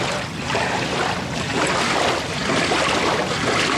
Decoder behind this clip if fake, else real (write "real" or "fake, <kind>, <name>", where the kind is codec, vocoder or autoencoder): real